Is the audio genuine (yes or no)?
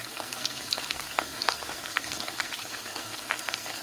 no